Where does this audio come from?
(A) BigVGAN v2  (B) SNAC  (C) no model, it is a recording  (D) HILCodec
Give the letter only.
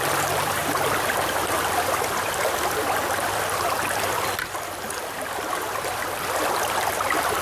A